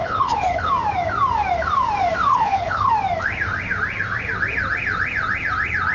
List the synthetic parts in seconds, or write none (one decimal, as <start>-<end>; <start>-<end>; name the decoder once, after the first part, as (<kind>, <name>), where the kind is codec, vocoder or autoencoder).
0.0-0.7 (codec, HILCodec); 2.3-2.9